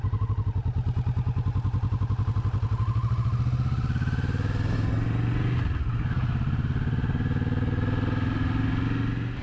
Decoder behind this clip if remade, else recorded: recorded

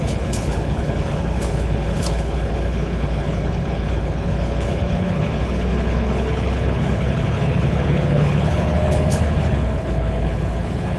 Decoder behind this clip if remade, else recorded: remade, codec, HILCodec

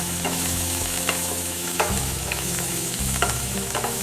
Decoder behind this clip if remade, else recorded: remade, autoencoder, DAC-VAE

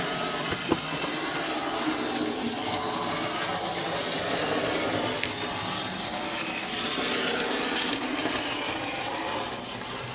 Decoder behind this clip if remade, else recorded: remade, vocoder, BigVGAN v2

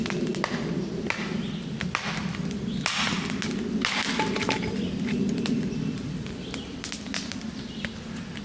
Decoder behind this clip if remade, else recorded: recorded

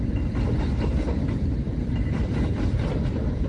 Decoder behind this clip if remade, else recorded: recorded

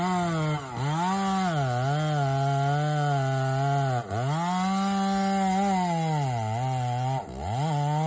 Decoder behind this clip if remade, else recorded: recorded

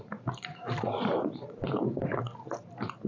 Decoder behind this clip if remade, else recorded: remade, vocoder, BigVGAN v2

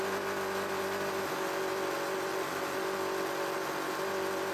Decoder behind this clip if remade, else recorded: recorded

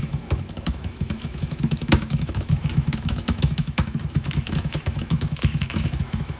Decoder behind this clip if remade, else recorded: remade, autoencoder, DAC-VAE